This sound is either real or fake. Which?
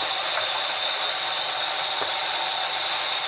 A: fake